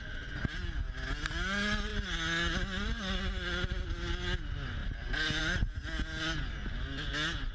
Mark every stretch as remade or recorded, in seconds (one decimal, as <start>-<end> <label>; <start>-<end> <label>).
0.0-7.5 recorded